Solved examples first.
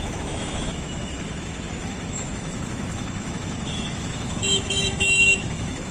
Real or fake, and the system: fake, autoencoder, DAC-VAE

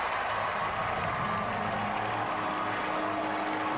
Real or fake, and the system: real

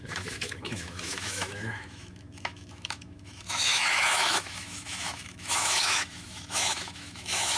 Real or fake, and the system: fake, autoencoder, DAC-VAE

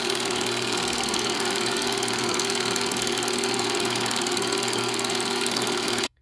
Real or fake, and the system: fake, codec, SNAC